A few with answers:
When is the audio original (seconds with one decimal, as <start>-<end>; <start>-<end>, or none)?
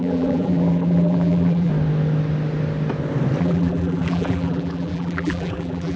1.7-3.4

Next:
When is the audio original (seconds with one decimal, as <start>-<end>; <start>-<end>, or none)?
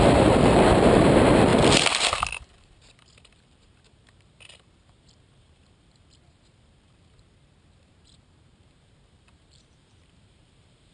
1.5-2.3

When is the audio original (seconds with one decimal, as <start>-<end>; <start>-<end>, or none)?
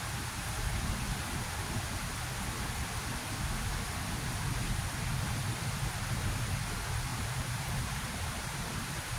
0.0-7.1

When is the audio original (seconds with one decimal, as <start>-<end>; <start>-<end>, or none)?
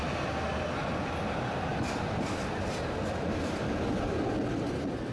0.0-5.1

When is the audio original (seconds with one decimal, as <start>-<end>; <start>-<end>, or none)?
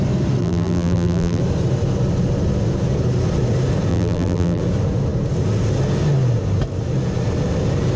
0.0-0.4; 1.4-3.9; 4.6-8.0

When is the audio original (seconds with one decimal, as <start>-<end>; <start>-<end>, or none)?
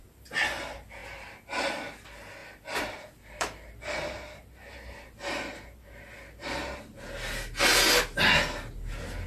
0.0-2.4; 4.4-9.3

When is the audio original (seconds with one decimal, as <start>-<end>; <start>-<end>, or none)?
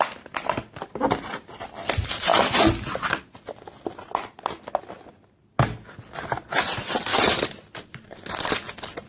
0.0-7.1; 8.4-9.1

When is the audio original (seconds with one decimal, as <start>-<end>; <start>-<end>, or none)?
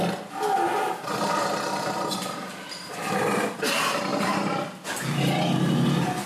0.0-6.3